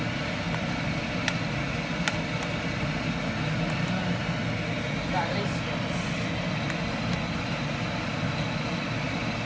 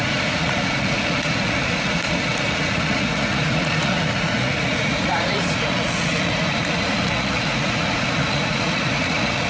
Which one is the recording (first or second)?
first